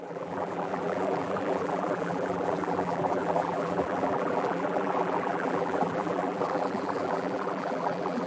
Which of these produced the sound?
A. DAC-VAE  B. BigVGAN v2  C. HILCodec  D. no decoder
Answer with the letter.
B